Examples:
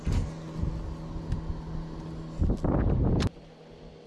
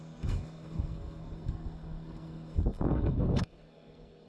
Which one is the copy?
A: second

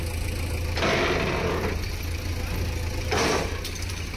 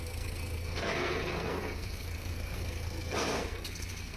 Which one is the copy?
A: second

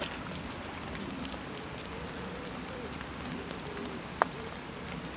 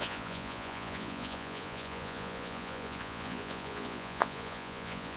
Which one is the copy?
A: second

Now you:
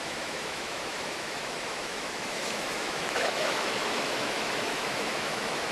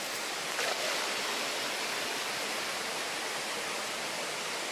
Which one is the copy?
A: first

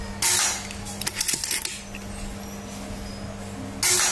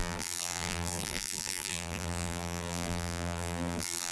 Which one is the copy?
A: second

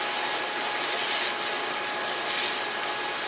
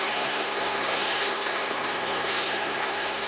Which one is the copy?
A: second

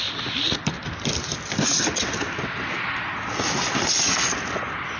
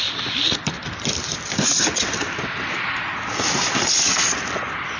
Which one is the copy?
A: second